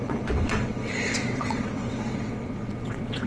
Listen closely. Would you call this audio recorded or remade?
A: remade